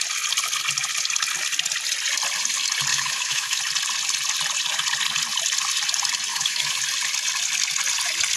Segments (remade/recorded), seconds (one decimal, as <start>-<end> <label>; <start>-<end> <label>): 0.0-2.9 recorded; 2.9-3.6 remade; 3.6-6.3 recorded; 6.3-6.8 remade; 6.8-8.4 recorded